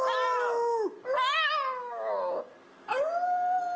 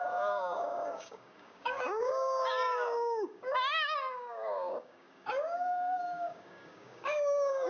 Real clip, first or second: first